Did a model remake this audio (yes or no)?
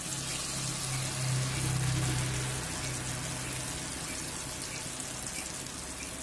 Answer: no